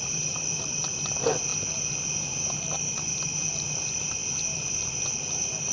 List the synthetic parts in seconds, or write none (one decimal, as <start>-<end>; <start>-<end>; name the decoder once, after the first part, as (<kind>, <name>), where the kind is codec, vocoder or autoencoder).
0.0-1.5 (vocoder, BigVGAN v2); 3.4-4.2; 4.9-5.7